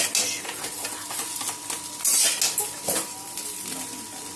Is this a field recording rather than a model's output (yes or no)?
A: yes